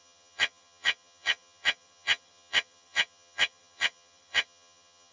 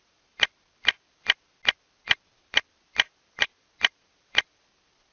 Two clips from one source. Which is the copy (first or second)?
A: first